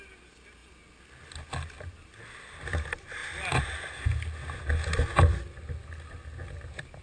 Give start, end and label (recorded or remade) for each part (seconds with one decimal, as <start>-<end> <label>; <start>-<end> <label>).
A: 0.0-7.0 recorded